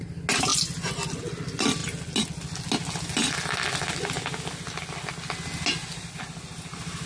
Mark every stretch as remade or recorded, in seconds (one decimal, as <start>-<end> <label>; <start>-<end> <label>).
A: 0.0-7.1 recorded